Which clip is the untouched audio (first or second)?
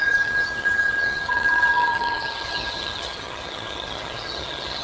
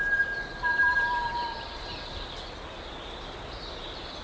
second